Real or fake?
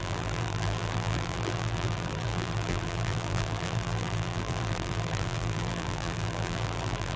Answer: fake